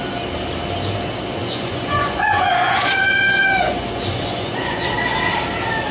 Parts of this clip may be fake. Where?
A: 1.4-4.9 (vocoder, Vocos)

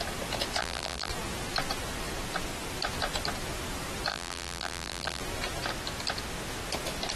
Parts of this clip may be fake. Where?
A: 0.6-1.1 (vocoder, BigVGAN v2); 4.1-5.2

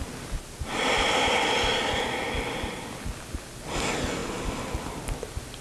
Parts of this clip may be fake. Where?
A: none

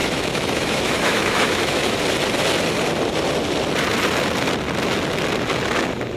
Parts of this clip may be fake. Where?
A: 0.0-2.0 (autoencoder, DAC-VAE)

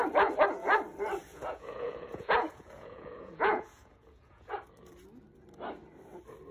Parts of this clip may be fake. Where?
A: 1.3-4.5 (vocoder, Vocos)

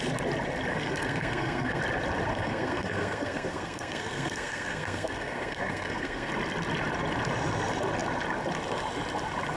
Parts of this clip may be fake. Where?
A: 0.7-1.8 (codec, SNAC); 2.3-6.3